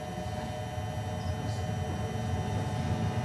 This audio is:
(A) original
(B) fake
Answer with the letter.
A